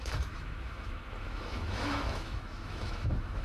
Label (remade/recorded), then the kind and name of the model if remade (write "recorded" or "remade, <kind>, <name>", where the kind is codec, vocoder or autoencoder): remade, autoencoder, DAC-VAE